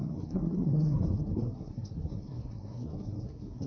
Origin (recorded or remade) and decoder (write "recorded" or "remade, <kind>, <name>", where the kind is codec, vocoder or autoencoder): remade, codec, SNAC